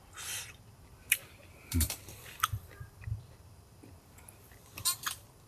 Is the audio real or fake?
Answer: fake